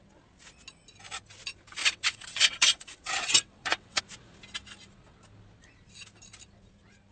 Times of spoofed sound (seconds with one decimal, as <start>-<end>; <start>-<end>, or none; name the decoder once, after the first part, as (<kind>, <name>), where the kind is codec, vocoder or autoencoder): 1.8-4.0 (vocoder, WaveNeXt)